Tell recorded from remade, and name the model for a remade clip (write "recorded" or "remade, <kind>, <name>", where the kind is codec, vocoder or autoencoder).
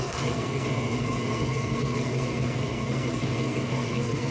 remade, codec, SNAC